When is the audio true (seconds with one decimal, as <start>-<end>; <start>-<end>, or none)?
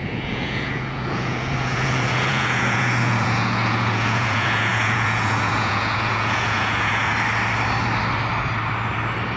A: 7.1-9.4